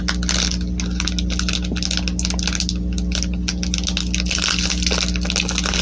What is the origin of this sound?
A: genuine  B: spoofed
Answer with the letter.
A